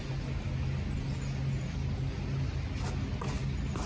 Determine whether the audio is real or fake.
real